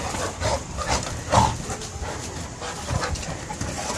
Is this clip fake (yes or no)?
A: no